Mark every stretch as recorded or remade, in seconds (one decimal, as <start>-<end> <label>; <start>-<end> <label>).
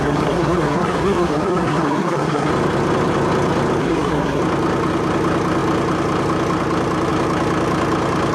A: 0.0-2.5 remade; 2.5-3.8 recorded; 3.8-4.4 remade; 4.4-8.3 recorded